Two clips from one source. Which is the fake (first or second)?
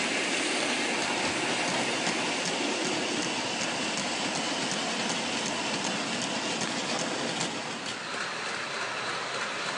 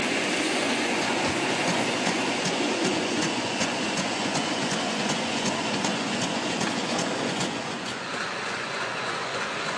second